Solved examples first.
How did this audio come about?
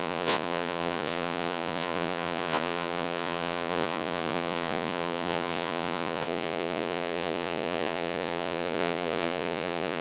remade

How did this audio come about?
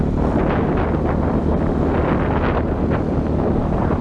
recorded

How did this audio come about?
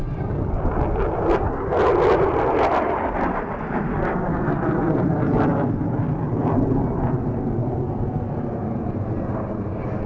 recorded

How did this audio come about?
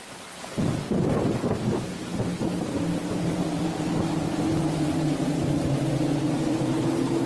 recorded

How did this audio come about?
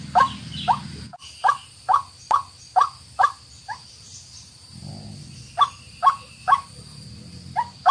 recorded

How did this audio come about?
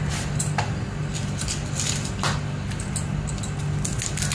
recorded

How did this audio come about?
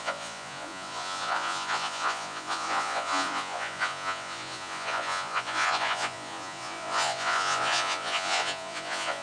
remade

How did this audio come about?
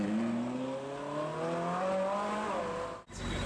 recorded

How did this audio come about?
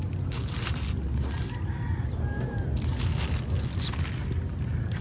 recorded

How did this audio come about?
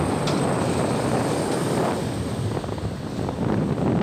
recorded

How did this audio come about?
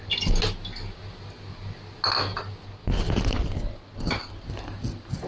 recorded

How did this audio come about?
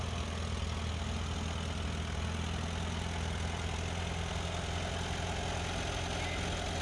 recorded